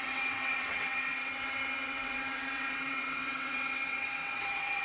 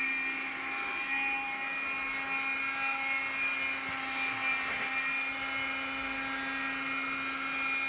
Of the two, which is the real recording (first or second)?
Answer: second